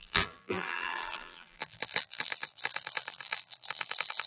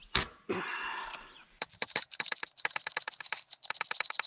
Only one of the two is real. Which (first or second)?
second